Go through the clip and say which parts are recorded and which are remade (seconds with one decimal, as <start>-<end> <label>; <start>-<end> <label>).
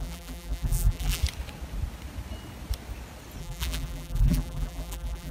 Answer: 0.0-1.2 remade; 1.2-3.4 recorded; 3.4-5.3 remade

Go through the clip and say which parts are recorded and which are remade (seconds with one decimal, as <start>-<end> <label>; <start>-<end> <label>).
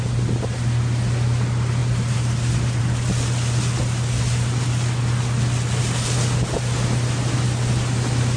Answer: 0.0-8.4 recorded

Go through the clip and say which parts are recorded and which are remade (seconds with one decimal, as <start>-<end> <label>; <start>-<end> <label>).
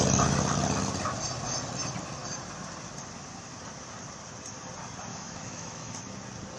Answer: 0.0-5.1 recorded; 5.1-6.0 remade; 6.0-6.6 recorded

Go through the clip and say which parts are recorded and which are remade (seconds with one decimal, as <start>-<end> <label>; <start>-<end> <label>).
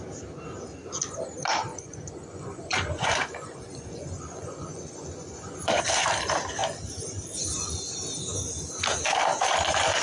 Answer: 0.0-1.7 recorded; 1.7-5.8 remade; 5.8-10.0 recorded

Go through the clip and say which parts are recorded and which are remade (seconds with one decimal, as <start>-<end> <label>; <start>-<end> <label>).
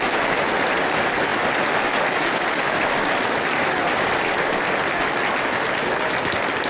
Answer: 0.0-6.7 recorded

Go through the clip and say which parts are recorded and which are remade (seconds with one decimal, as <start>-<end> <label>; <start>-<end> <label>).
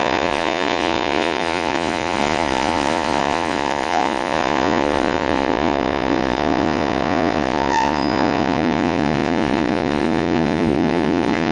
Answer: 0.0-11.5 remade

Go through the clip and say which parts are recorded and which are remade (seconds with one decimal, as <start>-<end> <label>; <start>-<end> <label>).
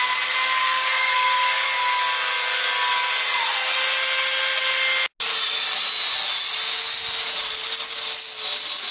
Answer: 0.0-0.6 recorded; 0.6-1.7 remade; 1.7-8.9 recorded